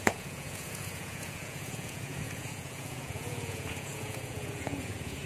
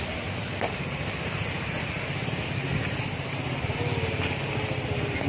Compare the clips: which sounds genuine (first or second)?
second